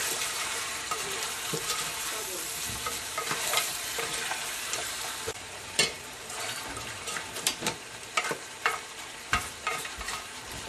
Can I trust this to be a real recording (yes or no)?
no